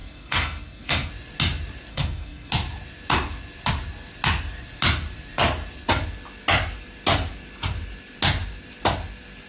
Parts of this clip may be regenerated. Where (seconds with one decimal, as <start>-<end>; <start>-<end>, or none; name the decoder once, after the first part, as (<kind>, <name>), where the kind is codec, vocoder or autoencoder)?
0.0-1.1 (codec, SNAC); 1.9-2.5